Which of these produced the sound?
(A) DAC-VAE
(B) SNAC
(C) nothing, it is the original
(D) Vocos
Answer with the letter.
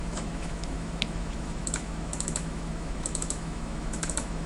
A